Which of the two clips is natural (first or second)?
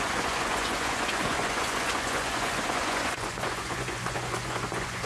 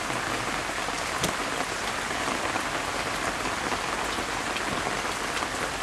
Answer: second